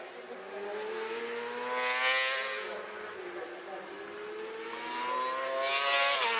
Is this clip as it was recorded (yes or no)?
yes